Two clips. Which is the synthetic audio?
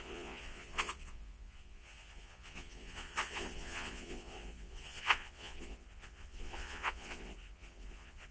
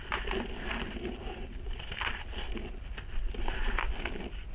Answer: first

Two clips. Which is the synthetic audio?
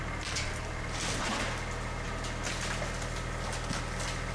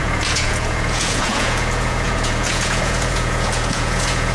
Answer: second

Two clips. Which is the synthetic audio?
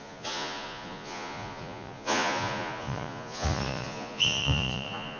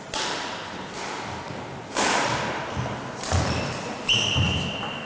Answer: first